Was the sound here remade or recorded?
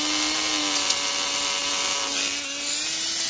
recorded